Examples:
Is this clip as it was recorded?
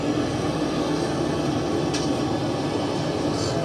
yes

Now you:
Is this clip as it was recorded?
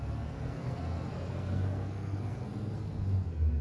no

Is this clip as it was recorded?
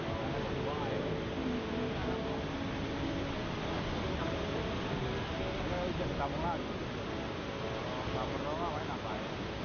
yes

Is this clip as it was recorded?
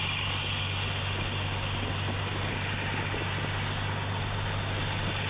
yes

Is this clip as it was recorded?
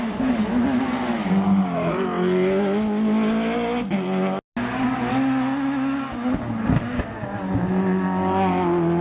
yes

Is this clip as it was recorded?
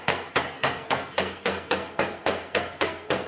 no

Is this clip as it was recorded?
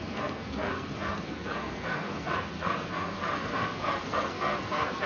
no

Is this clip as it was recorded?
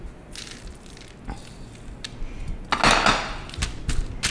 yes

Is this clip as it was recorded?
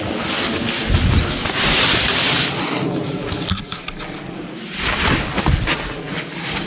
yes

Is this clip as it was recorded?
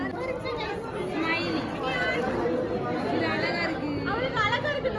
yes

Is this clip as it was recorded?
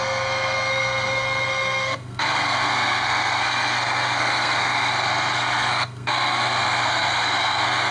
no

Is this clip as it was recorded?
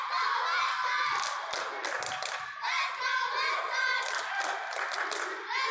yes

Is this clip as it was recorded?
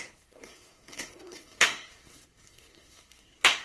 no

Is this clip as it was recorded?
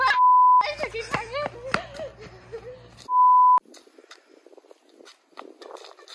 yes